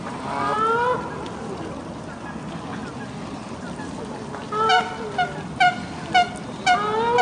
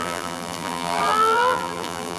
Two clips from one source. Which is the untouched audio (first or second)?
first